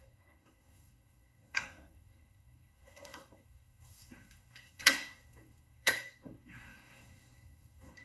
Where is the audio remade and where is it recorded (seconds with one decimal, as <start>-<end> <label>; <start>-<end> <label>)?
0.0-8.0 remade